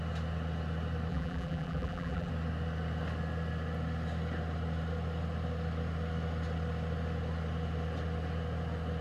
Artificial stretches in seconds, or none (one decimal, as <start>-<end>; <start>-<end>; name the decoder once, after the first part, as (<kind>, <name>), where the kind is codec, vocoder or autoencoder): 1.1-2.3 (vocoder, BigVGAN v2)